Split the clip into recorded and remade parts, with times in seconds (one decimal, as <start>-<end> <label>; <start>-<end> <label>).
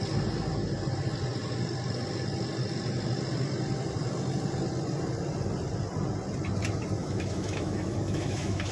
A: 0.0-7.0 recorded; 7.0-8.7 remade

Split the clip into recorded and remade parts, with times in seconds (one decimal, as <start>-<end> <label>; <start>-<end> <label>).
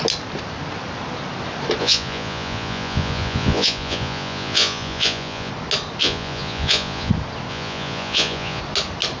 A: 0.0-1.8 recorded; 1.8-5.5 remade; 5.5-6.0 recorded; 6.0-7.1 remade; 7.1-7.5 recorded; 7.5-8.6 remade; 8.6-9.2 recorded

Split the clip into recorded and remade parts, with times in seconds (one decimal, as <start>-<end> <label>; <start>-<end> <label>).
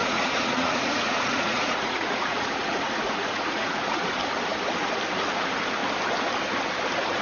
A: 0.0-4.1 remade; 4.1-7.2 recorded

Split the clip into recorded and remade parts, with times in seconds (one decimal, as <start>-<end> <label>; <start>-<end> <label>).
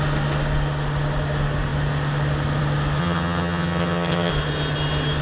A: 0.0-3.0 recorded; 3.0-4.3 remade; 4.3-5.2 recorded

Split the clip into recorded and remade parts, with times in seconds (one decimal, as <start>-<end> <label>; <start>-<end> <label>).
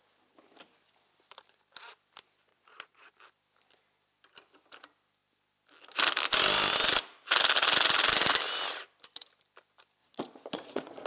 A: 0.0-2.5 recorded; 2.5-3.1 remade; 3.1-10.0 recorded; 10.0-11.1 remade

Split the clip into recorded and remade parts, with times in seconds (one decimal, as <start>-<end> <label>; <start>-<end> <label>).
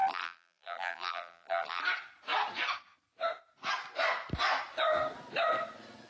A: 0.0-1.8 remade; 1.8-6.1 recorded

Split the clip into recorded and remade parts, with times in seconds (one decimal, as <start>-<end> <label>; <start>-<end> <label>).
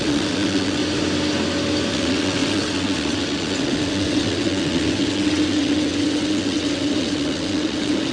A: 0.0-0.8 remade; 0.8-1.9 recorded; 1.9-8.1 remade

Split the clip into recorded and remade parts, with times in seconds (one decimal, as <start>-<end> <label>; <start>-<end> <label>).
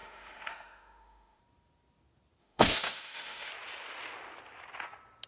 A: 0.0-1.4 remade; 1.4-2.4 recorded; 2.4-3.5 remade; 3.5-5.3 recorded